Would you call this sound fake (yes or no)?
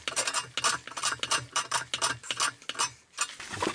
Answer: no